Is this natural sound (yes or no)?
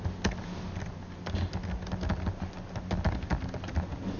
yes